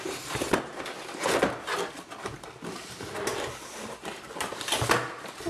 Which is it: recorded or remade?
recorded